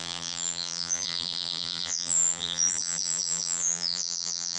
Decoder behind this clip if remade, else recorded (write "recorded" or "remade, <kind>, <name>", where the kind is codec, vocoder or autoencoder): remade, vocoder, BigVGAN v2